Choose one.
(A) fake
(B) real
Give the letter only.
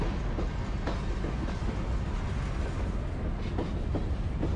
B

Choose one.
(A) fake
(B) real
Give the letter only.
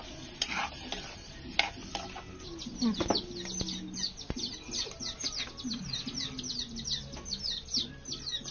B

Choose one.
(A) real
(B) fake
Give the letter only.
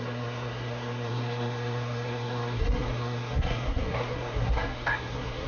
B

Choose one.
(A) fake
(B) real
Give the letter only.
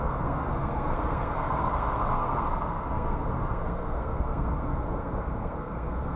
A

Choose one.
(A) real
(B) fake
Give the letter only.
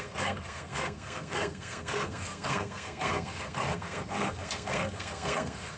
B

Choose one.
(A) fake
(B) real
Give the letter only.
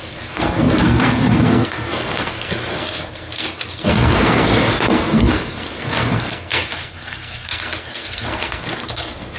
A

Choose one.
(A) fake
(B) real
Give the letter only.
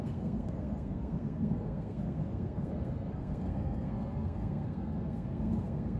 A